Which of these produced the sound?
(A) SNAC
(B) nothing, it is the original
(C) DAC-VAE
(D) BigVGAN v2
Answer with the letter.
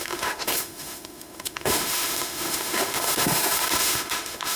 C